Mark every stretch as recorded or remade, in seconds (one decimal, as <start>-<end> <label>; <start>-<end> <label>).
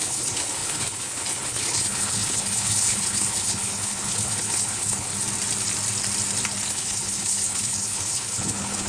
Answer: 0.0-5.1 remade; 5.1-6.7 recorded; 6.7-8.9 remade